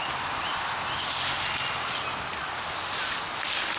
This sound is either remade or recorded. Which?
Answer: recorded